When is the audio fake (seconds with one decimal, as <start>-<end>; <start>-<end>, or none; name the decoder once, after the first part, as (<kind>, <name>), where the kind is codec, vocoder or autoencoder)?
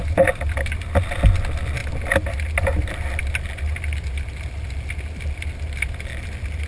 none